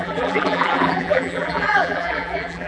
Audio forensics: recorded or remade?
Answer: remade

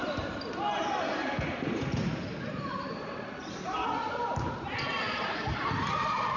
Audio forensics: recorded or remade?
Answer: remade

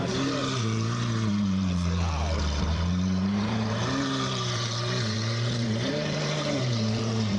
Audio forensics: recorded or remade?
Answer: remade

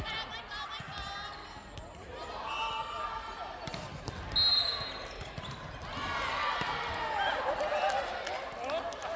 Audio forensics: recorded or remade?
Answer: recorded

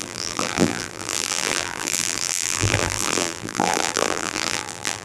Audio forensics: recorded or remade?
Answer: remade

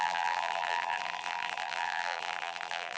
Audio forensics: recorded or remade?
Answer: remade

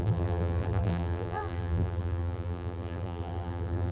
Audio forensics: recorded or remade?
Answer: remade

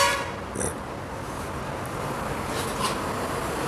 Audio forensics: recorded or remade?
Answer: recorded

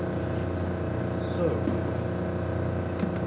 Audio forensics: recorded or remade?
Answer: recorded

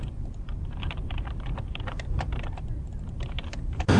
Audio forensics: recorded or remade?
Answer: remade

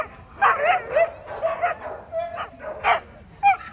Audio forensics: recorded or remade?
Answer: recorded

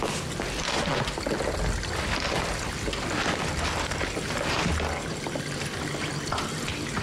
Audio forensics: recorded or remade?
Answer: recorded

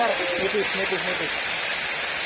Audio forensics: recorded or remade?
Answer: remade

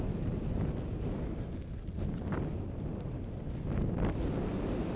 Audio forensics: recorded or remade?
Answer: recorded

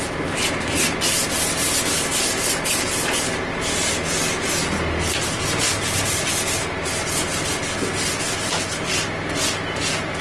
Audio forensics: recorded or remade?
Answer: recorded